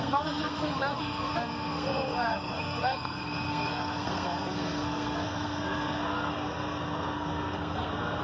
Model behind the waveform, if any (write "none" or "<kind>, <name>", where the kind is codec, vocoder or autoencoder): codec, SNAC